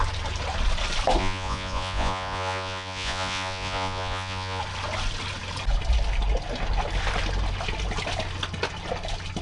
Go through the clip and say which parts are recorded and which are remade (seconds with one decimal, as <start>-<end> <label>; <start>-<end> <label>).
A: 0.0-1.2 recorded; 1.2-4.6 remade; 4.6-9.4 recorded